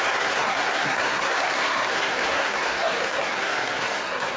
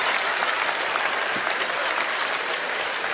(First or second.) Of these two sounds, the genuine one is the second